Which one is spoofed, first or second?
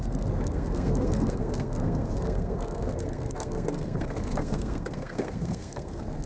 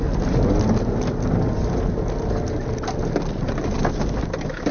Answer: first